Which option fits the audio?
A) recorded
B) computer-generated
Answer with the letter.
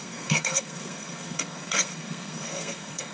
B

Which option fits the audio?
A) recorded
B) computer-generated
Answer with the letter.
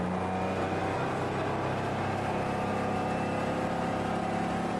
A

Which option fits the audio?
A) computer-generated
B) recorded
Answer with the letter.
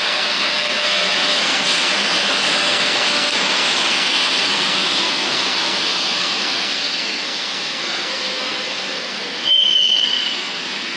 A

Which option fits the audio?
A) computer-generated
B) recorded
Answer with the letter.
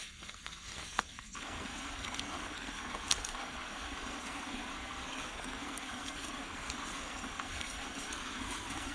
A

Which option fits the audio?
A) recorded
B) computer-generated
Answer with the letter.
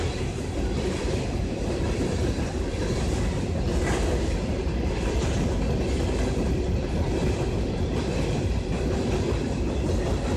A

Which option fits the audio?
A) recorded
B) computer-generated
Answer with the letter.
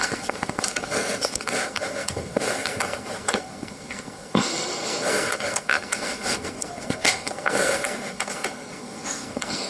B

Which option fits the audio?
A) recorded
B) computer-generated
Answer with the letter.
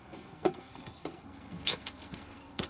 B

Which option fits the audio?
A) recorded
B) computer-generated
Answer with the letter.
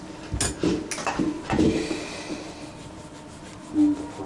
A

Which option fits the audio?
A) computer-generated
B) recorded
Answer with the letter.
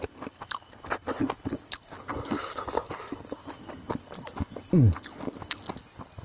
B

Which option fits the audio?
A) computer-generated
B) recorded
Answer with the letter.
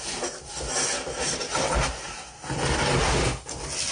B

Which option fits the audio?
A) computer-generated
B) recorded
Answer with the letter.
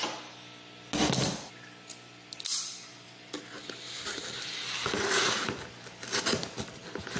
B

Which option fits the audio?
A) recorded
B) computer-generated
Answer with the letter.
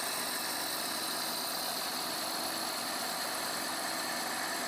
A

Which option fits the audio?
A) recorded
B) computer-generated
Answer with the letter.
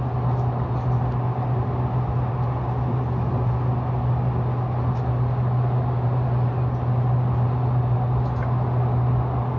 A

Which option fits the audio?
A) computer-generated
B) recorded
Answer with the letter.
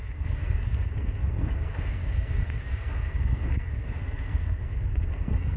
A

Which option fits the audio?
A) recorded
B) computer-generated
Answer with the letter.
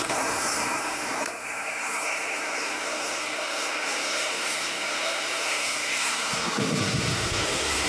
B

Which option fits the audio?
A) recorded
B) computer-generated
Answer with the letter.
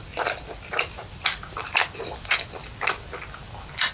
A